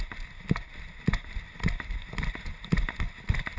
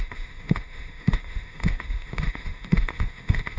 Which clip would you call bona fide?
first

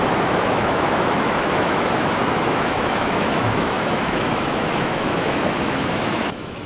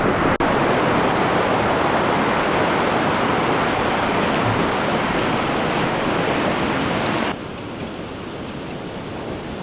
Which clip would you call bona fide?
second